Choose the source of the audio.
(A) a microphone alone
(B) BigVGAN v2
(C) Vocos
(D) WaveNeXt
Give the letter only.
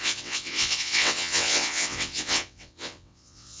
D